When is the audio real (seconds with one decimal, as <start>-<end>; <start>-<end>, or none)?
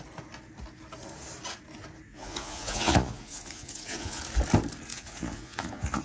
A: 0.0-2.1; 4.2-4.9